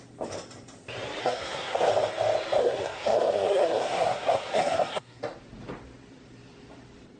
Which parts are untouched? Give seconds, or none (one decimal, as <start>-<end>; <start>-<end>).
0.0-1.2; 1.9-2.6; 5.2-7.2